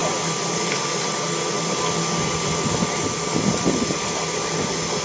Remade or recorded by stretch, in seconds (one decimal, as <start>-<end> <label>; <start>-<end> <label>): 0.0-5.0 recorded